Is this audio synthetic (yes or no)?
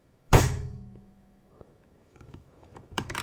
yes